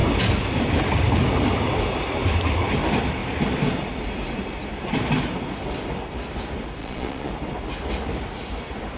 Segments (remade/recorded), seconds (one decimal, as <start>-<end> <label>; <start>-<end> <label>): 0.0-6.8 recorded; 6.8-7.3 remade; 7.3-9.0 recorded